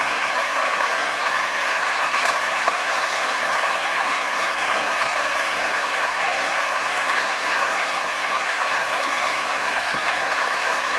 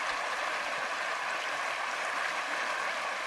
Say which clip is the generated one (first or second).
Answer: first